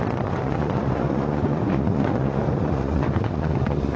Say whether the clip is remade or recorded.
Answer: remade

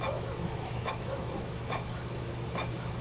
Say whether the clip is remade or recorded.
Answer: remade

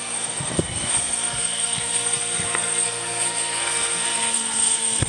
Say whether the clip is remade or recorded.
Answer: remade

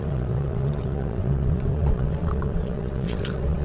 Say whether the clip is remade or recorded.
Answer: remade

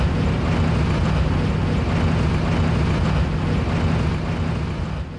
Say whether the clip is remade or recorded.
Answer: recorded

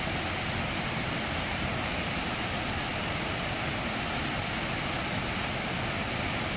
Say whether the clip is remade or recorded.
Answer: recorded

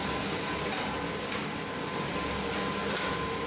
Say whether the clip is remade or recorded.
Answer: recorded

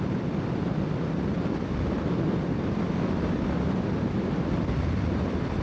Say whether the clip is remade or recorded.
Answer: recorded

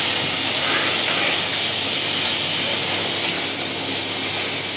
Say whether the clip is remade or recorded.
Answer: recorded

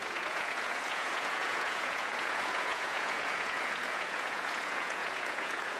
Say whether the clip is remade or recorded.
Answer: remade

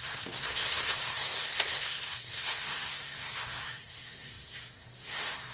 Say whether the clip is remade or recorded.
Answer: remade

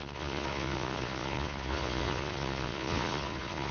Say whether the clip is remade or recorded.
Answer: remade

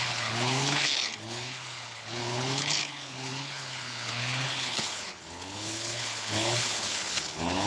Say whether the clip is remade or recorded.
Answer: remade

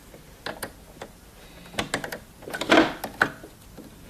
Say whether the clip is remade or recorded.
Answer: recorded